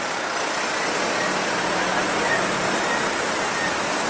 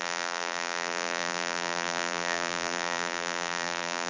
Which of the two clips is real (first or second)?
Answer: first